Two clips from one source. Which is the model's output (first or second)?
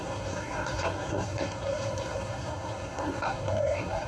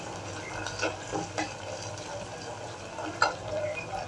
first